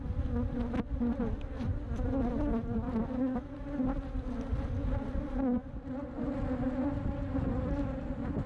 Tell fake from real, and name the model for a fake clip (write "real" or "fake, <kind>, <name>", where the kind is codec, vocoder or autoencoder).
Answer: real